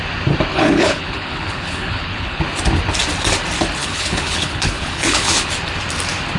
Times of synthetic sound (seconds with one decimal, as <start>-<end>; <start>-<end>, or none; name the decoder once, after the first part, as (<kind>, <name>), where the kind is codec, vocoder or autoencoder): 0.5-2.4 (codec, HILCodec); 3.8-5.5